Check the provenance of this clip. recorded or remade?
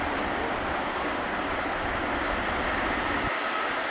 recorded